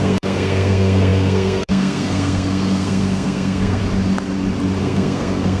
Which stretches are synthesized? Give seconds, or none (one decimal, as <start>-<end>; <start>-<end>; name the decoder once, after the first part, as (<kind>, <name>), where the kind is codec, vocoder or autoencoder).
0.0-3.8 (codec, SNAC); 4.8-5.6